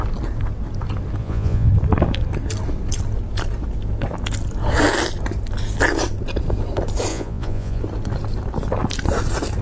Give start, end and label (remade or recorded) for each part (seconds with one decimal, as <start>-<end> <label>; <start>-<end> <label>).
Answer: 0.0-1.2 recorded; 1.2-1.7 remade; 1.7-7.1 recorded; 7.1-7.8 remade; 7.8-9.6 recorded

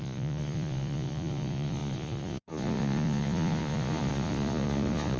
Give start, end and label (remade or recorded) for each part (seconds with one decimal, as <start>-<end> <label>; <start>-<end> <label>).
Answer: 0.0-5.2 remade

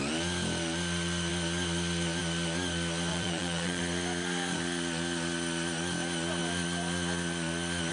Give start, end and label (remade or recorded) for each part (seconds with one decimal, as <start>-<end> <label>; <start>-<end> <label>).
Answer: 0.0-3.1 recorded; 3.1-3.8 remade; 3.8-7.9 recorded